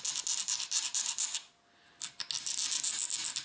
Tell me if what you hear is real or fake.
real